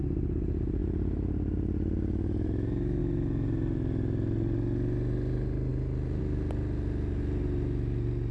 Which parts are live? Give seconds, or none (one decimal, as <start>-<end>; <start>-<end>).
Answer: 0.0-8.3